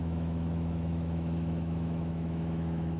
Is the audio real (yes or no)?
no